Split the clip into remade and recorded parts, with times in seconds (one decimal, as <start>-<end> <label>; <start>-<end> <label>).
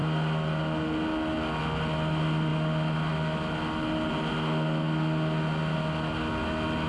0.0-6.9 recorded